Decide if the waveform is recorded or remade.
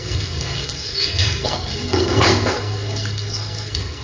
remade